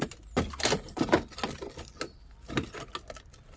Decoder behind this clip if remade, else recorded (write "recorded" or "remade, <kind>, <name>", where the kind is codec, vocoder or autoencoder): recorded